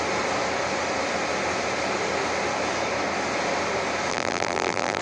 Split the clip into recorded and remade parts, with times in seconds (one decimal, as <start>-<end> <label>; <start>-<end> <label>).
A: 0.0-4.1 recorded; 4.1-5.0 remade